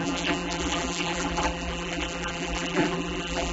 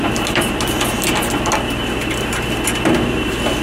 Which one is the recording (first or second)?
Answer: second